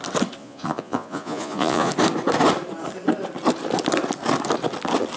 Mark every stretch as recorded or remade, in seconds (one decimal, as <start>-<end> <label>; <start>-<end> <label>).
0.0-0.4 recorded; 0.4-1.9 remade; 1.9-5.2 recorded